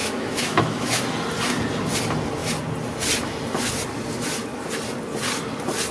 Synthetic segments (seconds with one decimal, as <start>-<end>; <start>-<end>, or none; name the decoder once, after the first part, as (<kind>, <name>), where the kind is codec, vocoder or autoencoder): 0.0-1.0 (autoencoder, DAC-VAE)